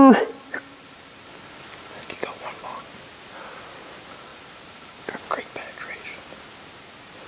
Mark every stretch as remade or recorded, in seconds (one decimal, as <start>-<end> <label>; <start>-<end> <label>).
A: 0.0-7.3 recorded